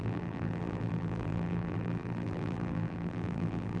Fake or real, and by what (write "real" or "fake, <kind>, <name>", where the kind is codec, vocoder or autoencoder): fake, vocoder, BigVGAN v2